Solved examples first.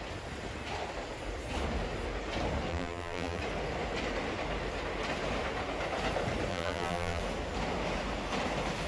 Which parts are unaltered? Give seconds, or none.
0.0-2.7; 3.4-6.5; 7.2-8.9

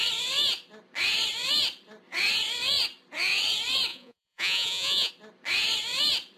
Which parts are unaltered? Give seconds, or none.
0.0-3.9; 5.1-6.4

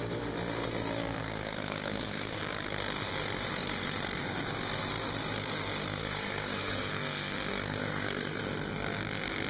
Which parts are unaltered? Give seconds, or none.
0.0-1.2; 2.4-6.0; 6.9-7.5; 8.4-9.5